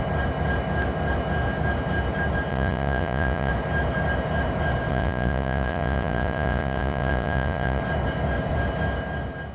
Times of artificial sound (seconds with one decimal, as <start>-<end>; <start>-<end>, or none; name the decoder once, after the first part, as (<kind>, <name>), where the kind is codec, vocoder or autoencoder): 2.5-3.5 (vocoder, Vocos); 4.9-7.8